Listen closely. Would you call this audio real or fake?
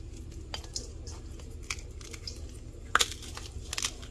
real